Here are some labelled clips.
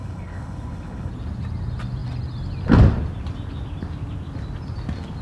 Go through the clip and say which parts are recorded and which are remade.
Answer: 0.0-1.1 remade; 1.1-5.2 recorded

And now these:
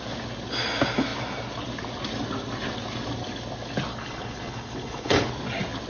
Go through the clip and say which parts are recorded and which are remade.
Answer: 0.0-3.9 recorded; 3.9-5.3 remade; 5.3-5.9 recorded

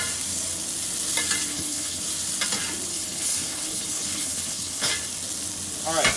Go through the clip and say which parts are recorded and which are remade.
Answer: 0.0-1.5 recorded; 1.5-2.0 remade; 2.0-2.9 recorded; 2.9-4.9 remade; 4.9-6.2 recorded

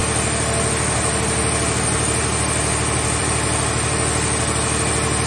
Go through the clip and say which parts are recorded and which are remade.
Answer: 0.0-5.3 recorded

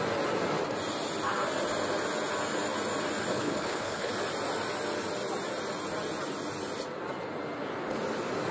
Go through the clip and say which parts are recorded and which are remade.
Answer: 0.0-3.3 recorded; 3.3-4.1 remade; 4.1-8.5 recorded

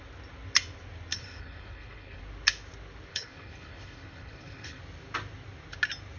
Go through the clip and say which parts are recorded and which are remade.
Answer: 0.0-1.1 recorded; 1.1-2.2 remade; 2.2-3.1 recorded; 3.1-4.8 remade; 4.8-6.2 recorded

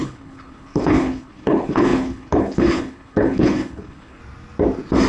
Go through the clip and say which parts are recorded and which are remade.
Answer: 0.0-4.2 remade; 4.2-5.1 recorded

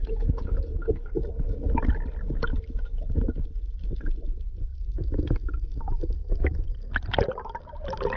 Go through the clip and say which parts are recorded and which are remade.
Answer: 0.0-1.1 remade; 1.1-8.2 recorded